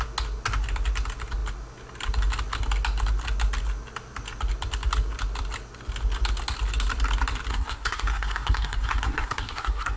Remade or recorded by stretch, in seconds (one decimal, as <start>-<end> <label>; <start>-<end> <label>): 0.0-7.5 recorded; 7.5-10.0 remade